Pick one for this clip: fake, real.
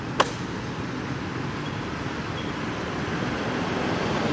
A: real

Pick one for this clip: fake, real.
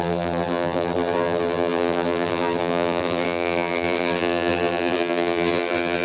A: fake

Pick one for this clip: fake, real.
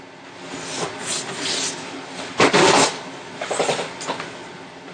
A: real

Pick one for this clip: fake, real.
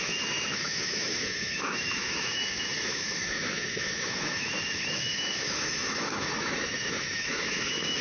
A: fake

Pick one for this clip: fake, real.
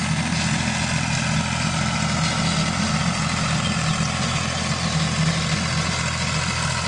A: real